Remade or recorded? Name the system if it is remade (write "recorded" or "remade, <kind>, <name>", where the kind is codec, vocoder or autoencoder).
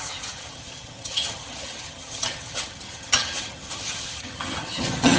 remade, vocoder, HiFi-GAN